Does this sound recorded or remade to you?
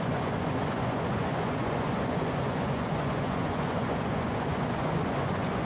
remade